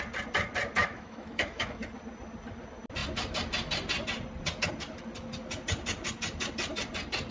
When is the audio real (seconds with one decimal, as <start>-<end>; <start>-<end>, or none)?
0.0-0.8; 1.8-7.3